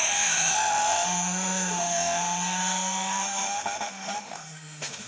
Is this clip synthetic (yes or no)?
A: yes